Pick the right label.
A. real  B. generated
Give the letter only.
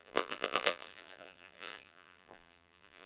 B